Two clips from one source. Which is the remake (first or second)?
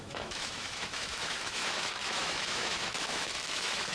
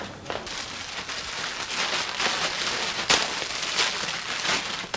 first